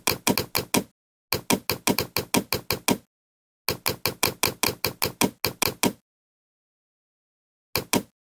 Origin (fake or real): real